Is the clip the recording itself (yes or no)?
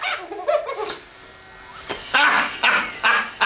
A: yes